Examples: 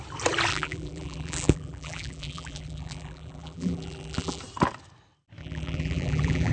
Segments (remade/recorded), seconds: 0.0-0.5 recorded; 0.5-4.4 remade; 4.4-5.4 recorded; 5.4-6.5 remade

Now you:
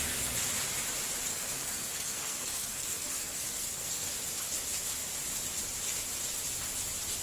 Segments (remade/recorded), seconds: 0.0-1.3 recorded; 1.3-4.1 remade; 4.1-7.2 recorded

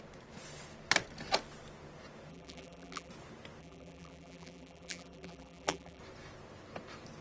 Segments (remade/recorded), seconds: 0.0-2.3 recorded; 2.3-3.1 remade; 3.1-3.6 recorded; 3.6-6.0 remade; 6.0-7.2 recorded

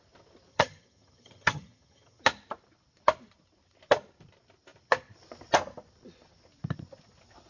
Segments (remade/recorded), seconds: 0.0-0.5 recorded; 0.5-2.2 remade; 2.2-7.5 recorded

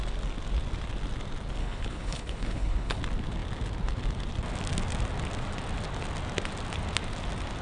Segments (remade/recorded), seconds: 0.0-1.6 recorded; 1.6-3.0 remade; 3.0-7.6 recorded

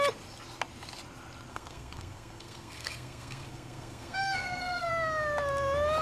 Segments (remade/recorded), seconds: 0.0-1.5 recorded; 1.5-4.9 remade; 4.9-6.0 recorded

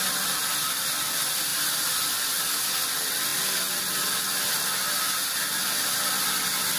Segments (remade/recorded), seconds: 0.0-6.8 recorded

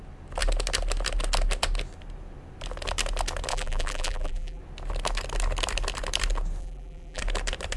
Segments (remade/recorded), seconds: 0.0-3.5 recorded; 3.5-4.6 remade; 4.6-6.6 recorded; 6.6-7.2 remade; 7.2-7.8 recorded